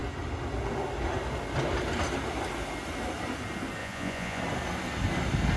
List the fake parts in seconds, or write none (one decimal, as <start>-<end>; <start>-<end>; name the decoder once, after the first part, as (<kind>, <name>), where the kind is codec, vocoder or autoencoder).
3.8-4.4 (vocoder, Vocos)